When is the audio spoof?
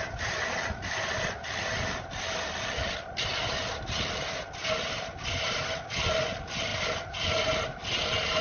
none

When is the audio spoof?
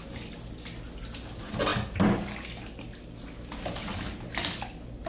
none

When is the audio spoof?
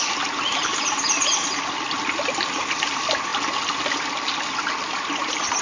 none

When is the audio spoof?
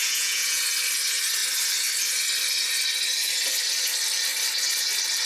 0.0-0.6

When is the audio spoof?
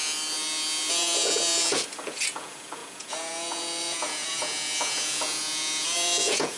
0.9-6.6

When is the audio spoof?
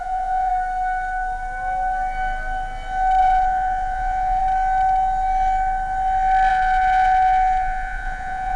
0.0-0.5; 3.2-4.4; 6.5-8.6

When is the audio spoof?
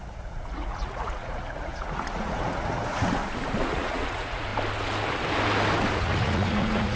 0.0-3.2; 3.7-4.5; 5.9-7.0